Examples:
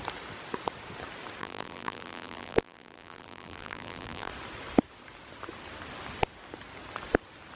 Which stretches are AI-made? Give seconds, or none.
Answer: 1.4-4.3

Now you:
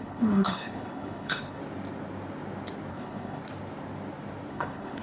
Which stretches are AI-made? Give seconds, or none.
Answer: 0.0-1.6; 2.9-3.4; 4.5-5.0

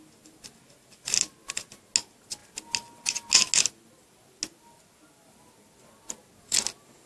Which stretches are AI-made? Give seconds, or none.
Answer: none